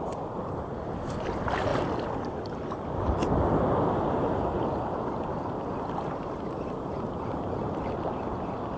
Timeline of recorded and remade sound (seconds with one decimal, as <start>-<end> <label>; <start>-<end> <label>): 0.0-1.7 recorded; 1.7-3.5 remade; 3.5-8.8 recorded